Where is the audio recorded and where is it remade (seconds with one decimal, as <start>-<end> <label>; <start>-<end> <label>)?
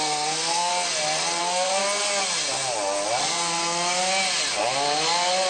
0.0-0.7 remade; 0.7-1.4 recorded; 1.4-1.8 remade; 1.8-3.2 recorded; 3.2-3.6 remade; 3.6-5.5 recorded